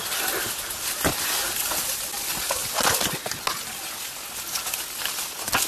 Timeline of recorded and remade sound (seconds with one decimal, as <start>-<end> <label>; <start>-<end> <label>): 0.0-5.7 recorded